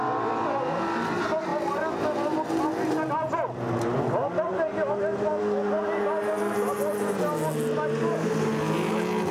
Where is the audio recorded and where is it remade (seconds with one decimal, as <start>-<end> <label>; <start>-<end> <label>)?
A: 0.0-9.3 recorded